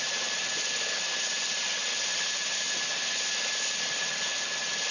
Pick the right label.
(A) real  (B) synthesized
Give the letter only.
A